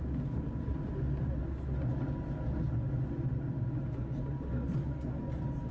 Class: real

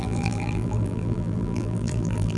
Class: fake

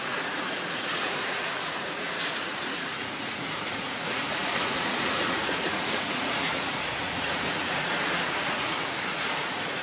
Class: fake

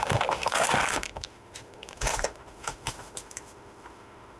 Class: fake